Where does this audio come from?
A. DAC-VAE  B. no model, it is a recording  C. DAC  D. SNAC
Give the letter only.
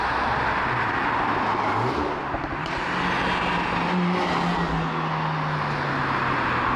B